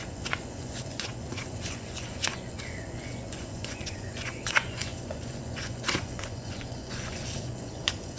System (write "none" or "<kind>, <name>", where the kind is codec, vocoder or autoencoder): vocoder, Vocos